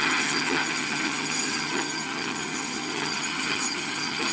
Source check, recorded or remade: remade